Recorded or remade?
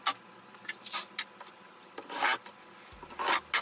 recorded